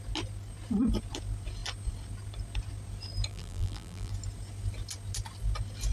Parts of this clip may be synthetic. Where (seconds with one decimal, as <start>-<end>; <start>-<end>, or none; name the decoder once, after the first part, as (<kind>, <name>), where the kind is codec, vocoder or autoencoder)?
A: 3.3-4.1 (vocoder, BigVGAN v2)